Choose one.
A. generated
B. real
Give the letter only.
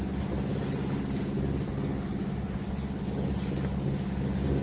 B